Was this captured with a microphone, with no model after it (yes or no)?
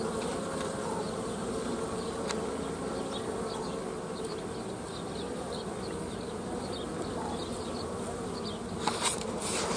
yes